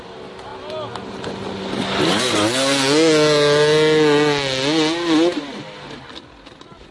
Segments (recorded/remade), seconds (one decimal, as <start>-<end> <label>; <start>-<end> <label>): 0.0-6.9 recorded